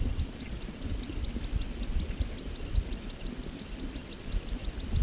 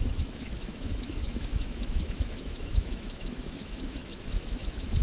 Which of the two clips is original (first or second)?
first